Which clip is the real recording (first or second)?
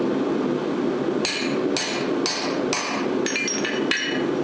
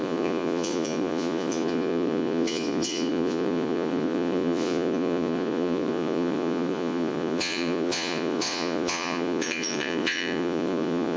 first